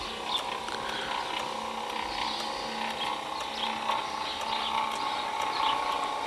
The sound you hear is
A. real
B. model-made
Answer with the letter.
A